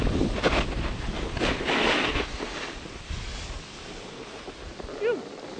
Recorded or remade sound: recorded